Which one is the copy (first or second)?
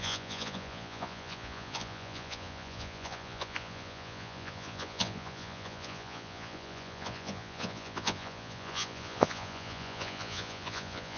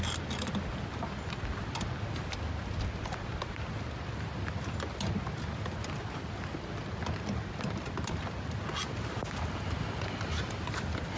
first